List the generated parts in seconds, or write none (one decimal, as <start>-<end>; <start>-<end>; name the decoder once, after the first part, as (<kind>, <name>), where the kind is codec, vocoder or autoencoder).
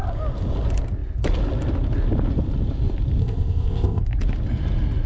3.2-4.0 (codec, ZipCodec)